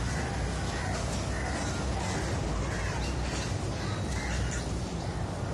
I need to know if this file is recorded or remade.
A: recorded